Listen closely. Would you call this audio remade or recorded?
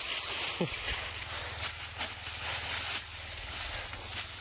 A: recorded